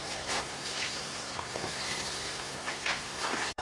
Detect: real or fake fake